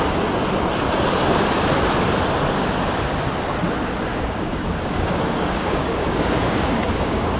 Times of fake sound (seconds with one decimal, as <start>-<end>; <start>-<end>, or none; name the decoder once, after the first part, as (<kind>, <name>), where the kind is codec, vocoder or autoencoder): 4.1-7.4 (codec, DAC)

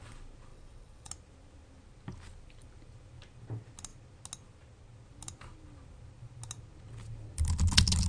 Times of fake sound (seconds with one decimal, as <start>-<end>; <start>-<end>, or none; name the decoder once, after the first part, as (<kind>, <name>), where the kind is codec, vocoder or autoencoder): 0.5-1.1 (vocoder, WaveNeXt)

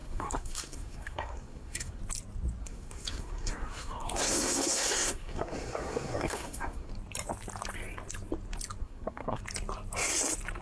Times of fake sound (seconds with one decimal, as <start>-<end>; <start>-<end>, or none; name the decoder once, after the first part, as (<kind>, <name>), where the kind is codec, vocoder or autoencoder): 0.0-2.0 (codec, SNAC); 2.6-6.9; 8.8-9.4

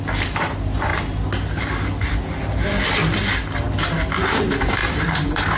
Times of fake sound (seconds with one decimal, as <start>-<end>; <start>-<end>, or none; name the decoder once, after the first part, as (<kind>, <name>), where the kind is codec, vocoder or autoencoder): 4.8-5.6 (vocoder, BigVGAN v2)